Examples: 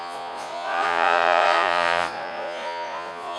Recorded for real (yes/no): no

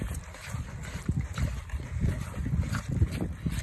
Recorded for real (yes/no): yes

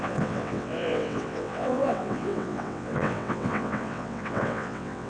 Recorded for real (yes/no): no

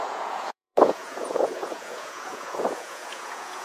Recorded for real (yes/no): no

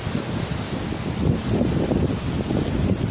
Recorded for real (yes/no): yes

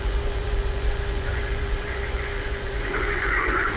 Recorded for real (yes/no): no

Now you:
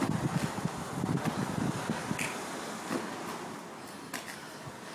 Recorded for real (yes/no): yes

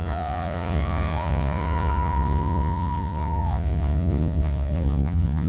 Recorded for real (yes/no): no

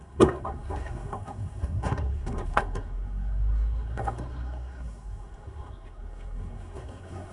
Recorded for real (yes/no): no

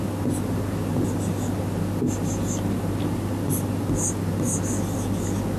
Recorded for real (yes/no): yes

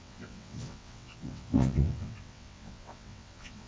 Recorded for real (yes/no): no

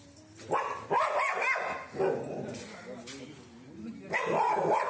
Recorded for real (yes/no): yes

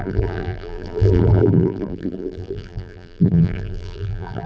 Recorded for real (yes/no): no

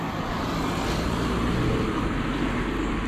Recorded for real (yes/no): yes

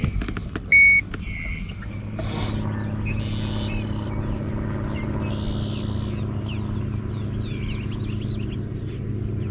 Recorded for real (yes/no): yes